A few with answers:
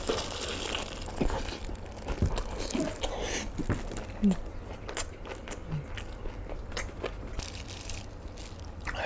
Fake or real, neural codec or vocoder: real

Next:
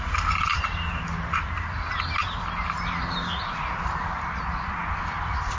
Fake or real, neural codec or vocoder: real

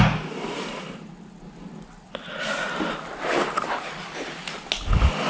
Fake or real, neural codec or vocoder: real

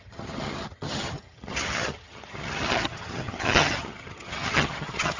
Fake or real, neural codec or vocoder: fake, vocoder, HiFi-GAN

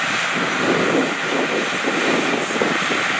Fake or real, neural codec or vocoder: real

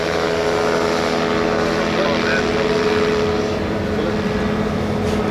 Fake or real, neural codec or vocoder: real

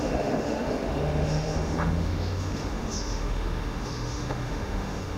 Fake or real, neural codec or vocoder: fake, autoencoder, DAC-VAE